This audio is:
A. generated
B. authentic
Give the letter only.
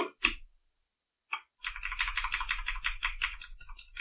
B